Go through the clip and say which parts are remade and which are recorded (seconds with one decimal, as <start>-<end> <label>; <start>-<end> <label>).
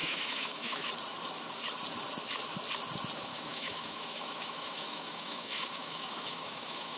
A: 0.0-0.9 remade; 0.9-3.3 recorded; 3.3-7.0 remade